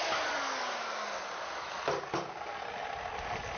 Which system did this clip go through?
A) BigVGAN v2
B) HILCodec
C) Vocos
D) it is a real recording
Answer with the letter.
D